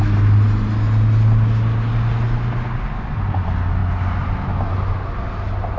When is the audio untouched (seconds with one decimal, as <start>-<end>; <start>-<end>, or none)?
0.0-5.8